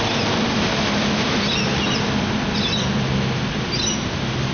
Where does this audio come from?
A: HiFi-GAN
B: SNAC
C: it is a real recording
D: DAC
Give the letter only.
C